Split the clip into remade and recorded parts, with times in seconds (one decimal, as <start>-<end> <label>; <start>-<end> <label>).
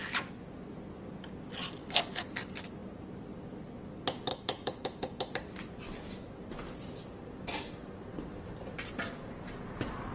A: 0.0-4.3 recorded; 4.3-5.3 remade; 5.3-10.1 recorded